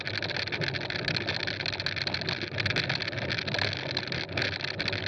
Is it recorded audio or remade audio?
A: recorded